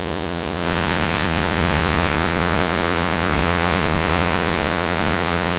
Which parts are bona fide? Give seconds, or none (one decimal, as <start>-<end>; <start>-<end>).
none

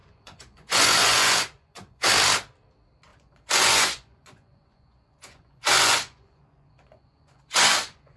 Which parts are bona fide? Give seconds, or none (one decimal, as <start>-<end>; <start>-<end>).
2.1-3.1

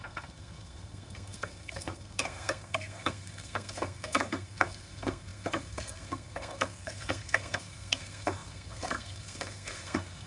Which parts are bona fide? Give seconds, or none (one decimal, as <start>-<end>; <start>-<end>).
none

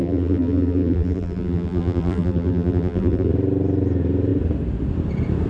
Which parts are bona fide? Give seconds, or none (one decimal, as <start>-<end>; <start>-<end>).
3.3-5.5

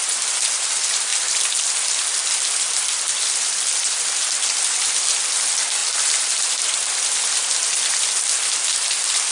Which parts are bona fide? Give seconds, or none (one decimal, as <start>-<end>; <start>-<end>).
0.0-9.3

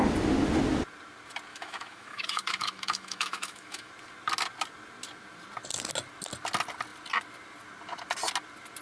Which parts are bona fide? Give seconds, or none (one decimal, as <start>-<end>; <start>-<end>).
0.0-1.5; 3.9-8.8

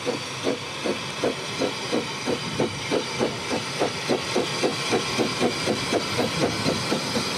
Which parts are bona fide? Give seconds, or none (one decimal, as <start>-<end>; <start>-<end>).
0.0-7.4

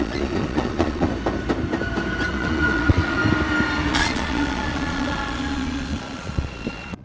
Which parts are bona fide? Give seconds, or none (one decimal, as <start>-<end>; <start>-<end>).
1.1-2.3; 3.2-3.9